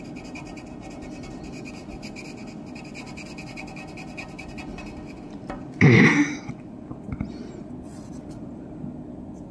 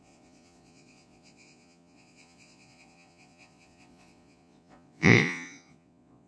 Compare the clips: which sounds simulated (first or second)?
second